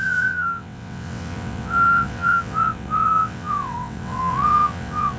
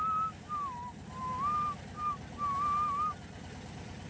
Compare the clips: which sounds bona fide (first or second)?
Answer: second